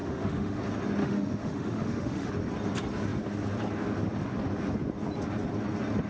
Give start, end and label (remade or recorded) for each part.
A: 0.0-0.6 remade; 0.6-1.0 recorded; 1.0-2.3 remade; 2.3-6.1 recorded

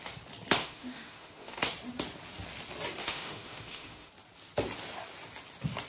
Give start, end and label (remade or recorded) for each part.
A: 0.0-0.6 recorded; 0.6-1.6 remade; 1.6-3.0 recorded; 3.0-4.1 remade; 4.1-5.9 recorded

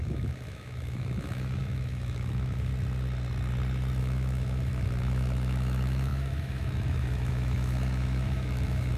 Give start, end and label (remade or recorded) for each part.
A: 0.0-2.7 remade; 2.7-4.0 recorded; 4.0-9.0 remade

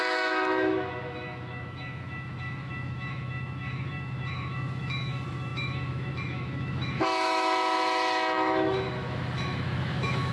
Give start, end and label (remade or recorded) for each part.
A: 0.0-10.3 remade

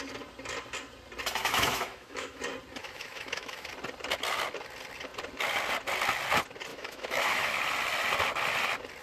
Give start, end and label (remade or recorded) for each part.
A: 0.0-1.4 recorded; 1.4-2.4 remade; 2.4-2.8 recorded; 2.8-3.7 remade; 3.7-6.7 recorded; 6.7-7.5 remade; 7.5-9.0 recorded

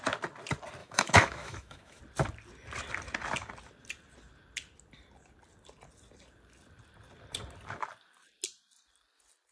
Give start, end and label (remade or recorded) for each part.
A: 0.0-0.8 recorded; 0.8-2.0 remade; 2.0-9.5 recorded

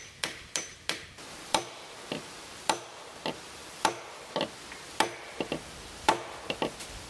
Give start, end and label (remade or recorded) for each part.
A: 0.0-7.1 recorded

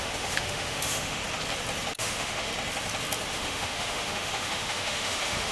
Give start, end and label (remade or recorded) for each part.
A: 0.0-1.2 remade; 1.2-2.0 recorded; 2.0-2.5 remade; 2.5-3.3 recorded; 3.3-5.5 remade